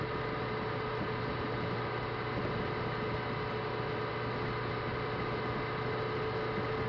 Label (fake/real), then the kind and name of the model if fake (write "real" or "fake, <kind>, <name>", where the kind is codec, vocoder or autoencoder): real